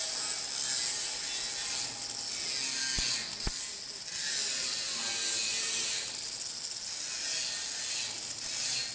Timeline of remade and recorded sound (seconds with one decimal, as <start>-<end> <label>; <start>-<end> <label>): 0.0-8.9 recorded